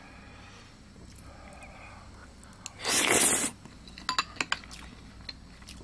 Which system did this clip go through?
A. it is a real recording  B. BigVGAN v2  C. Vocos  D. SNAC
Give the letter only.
A